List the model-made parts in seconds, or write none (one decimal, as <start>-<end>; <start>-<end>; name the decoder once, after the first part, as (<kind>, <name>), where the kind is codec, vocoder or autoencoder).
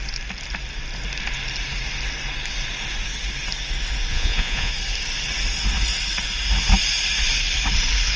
4.1-4.7 (vocoder, Vocos)